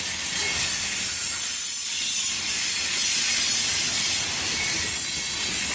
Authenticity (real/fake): real